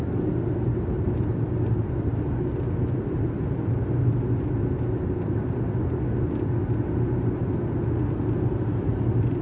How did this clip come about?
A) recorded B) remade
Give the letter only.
A